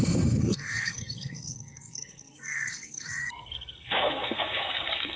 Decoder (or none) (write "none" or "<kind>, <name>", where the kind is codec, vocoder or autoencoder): codec, SNAC